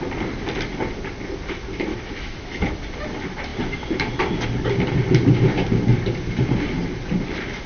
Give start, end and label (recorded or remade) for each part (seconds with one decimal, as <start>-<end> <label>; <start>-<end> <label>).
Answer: 0.0-1.9 recorded; 1.9-2.8 remade; 2.8-7.7 recorded